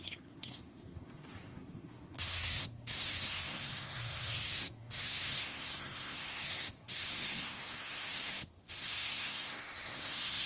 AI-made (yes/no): yes